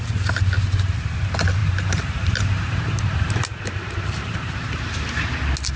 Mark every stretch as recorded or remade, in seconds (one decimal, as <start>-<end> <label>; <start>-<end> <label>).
0.0-1.6 recorded; 1.6-5.1 remade; 5.1-5.8 recorded